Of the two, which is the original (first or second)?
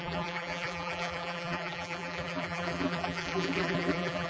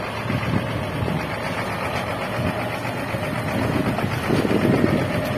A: second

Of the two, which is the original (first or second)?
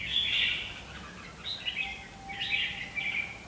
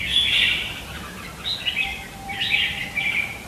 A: first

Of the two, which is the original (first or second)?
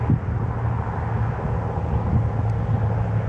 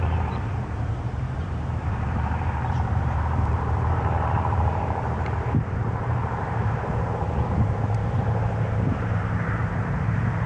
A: first